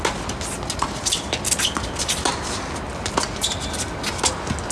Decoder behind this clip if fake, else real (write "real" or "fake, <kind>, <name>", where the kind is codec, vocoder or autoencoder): real